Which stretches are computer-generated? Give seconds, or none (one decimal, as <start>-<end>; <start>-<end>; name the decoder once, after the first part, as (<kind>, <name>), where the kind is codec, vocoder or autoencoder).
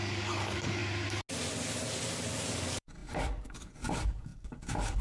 0.0-0.8 (codec, DAC); 2.5-5.0